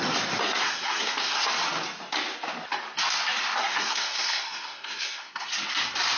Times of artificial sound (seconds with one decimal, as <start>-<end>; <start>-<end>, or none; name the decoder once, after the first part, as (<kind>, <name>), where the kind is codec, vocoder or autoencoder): 0.4-1.4 (codec, SNAC); 3.6-5.5